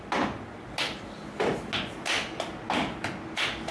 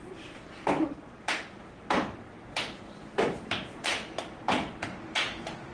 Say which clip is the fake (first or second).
second